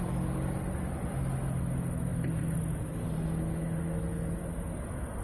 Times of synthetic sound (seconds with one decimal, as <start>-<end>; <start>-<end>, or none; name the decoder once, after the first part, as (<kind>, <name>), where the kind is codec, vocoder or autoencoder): none